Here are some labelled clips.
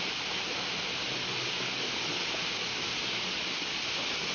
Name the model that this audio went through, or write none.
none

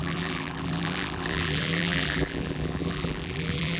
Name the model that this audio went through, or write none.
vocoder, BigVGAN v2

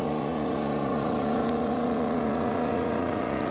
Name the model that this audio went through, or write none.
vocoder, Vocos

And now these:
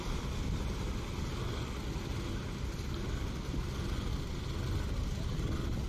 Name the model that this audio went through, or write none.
none